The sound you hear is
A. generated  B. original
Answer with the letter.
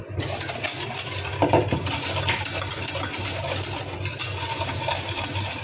B